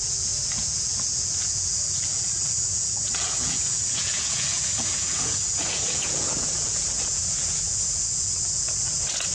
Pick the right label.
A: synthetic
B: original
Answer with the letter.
A